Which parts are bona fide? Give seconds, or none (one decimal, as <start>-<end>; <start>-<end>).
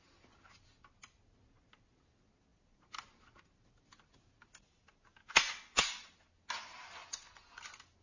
0.0-7.0; 7.6-8.0